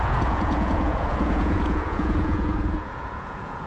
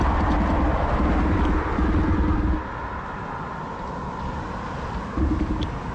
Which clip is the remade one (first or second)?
first